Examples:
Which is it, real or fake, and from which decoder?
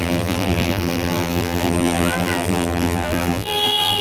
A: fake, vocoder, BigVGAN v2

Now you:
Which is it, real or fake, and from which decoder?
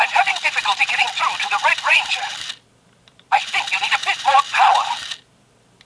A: fake, vocoder, BigVGAN v2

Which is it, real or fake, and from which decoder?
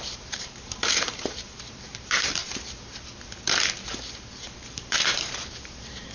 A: fake, vocoder, BigVGAN v2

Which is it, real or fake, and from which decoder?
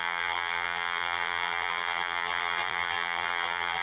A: fake, vocoder, BigVGAN v2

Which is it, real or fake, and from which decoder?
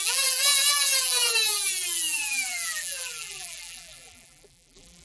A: fake, vocoder, BigVGAN v2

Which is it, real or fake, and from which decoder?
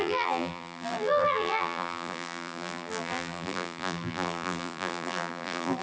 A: fake, vocoder, BigVGAN v2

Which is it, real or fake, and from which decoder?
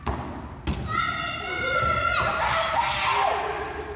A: real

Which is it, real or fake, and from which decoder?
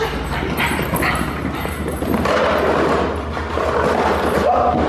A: real